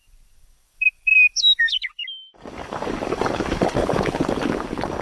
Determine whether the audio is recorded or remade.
remade